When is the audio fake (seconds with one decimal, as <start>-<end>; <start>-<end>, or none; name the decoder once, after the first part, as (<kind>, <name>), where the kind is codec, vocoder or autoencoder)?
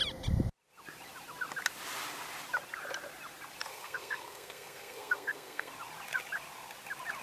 3.7-5.7 (codec, SNAC)